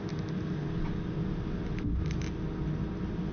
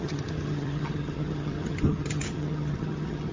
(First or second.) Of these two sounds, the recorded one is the first